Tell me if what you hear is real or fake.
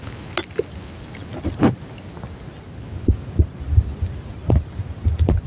real